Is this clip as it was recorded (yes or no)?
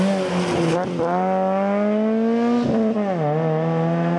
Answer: yes